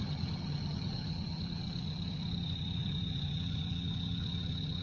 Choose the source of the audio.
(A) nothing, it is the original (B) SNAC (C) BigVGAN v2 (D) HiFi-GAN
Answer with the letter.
D